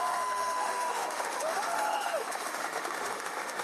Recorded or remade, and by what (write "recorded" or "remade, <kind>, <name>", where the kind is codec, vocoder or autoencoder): remade, autoencoder, DAC-VAE